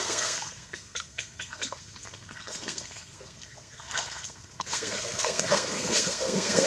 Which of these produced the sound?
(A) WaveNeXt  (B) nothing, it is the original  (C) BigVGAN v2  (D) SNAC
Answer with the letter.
D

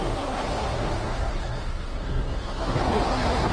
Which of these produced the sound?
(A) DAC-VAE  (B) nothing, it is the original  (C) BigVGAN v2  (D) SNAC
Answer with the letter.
D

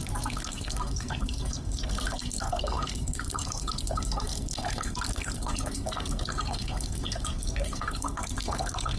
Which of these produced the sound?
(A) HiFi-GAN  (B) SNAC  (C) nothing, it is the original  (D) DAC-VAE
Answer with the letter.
B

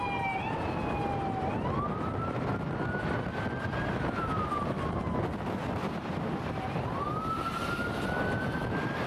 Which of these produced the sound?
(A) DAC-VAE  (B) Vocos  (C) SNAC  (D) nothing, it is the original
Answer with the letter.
D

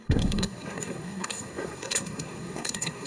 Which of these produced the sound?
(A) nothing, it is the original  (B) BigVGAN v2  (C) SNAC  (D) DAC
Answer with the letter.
C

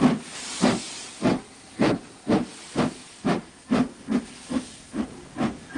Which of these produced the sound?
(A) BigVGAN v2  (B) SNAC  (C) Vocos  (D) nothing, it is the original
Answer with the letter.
D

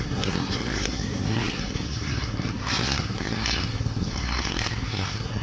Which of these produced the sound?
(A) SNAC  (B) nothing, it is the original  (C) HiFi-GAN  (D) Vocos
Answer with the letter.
A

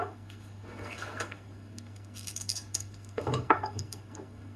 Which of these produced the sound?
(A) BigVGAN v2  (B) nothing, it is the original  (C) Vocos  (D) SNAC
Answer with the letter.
D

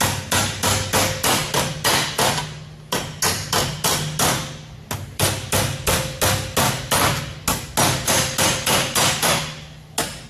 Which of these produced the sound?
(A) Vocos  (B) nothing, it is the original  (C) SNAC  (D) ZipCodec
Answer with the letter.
B